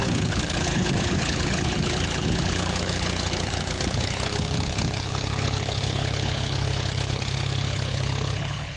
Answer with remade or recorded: remade